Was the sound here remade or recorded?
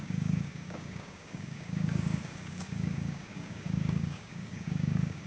remade